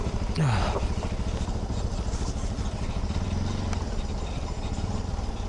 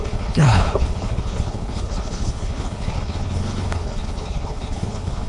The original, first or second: first